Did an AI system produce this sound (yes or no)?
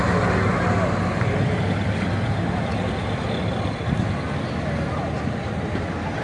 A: no